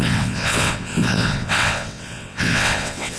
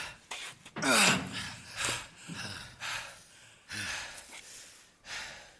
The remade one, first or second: first